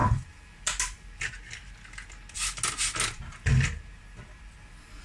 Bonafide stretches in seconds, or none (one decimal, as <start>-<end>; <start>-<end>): 0.0-5.0